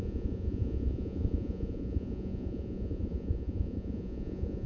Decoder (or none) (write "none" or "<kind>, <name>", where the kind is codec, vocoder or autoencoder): vocoder, Vocos